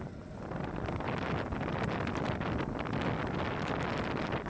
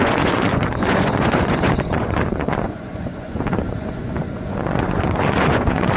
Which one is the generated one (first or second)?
second